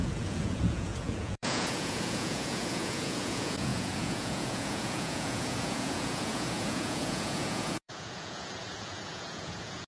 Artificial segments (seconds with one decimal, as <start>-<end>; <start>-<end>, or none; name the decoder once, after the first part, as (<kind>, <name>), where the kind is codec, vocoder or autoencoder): 0.0-9.9 (vocoder, Vocos)